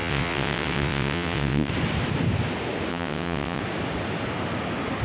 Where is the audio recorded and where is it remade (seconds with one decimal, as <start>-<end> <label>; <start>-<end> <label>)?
0.0-1.7 remade; 1.7-2.9 recorded; 2.9-3.6 remade; 3.6-5.0 recorded